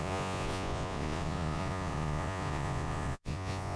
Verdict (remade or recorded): remade